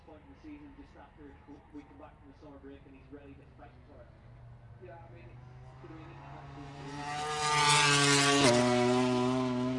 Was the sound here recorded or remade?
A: recorded